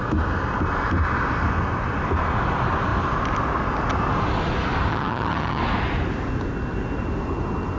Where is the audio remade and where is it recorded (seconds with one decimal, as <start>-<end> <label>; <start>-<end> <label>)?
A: 0.0-4.9 recorded; 4.9-5.6 remade; 5.6-7.8 recorded